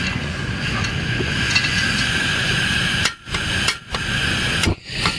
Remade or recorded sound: remade